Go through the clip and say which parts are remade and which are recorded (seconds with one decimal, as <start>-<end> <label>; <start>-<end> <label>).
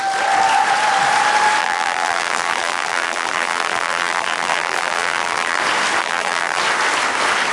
0.0-1.6 recorded; 1.6-5.6 remade; 5.6-6.0 recorded; 6.0-6.6 remade; 6.6-7.5 recorded